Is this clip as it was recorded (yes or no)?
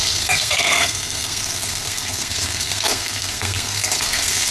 no